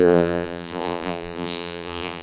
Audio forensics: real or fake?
fake